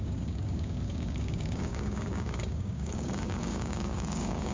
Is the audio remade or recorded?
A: remade